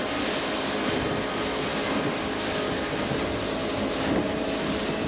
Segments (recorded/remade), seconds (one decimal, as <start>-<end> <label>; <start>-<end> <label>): 0.0-5.1 recorded